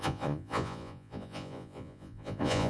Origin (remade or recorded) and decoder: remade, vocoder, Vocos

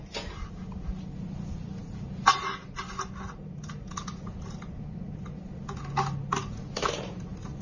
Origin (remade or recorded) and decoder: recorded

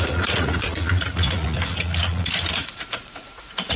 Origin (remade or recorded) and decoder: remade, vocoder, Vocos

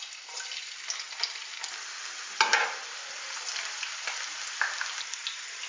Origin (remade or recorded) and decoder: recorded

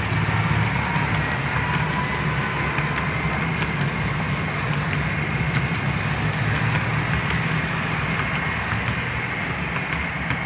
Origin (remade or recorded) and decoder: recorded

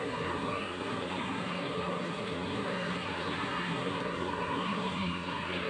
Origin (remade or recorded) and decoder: remade, codec, SNAC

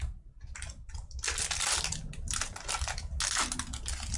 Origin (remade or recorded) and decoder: recorded